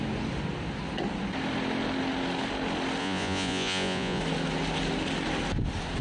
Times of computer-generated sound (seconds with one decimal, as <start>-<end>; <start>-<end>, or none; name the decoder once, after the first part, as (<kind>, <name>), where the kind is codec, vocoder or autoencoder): 3.0-4.2 (vocoder, Vocos)